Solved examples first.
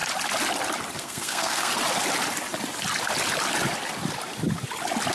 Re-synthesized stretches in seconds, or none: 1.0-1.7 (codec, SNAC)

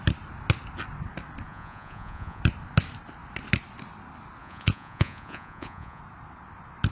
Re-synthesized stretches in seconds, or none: 1.5-2.4 (vocoder, Vocos); 4.4-6.0

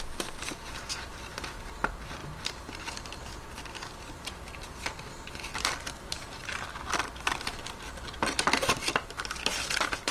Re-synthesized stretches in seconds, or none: none

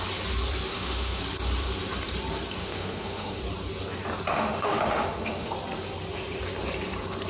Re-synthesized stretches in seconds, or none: 0.7-1.2 (autoencoder, DAC-VAE); 2.6-3.4; 4.3-5.5